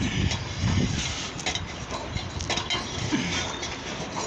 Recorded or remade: recorded